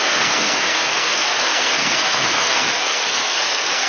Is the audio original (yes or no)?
no